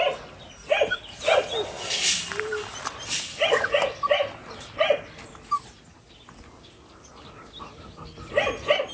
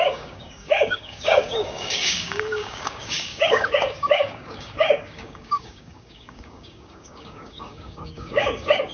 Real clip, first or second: first